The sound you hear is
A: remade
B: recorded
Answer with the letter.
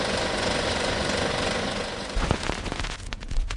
A